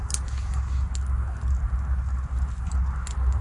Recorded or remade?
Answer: recorded